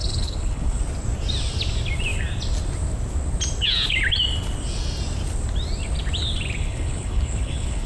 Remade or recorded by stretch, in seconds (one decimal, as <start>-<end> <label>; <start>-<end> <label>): 0.0-0.8 remade; 0.8-6.6 recorded; 6.6-7.9 remade